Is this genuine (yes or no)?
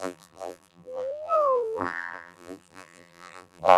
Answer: no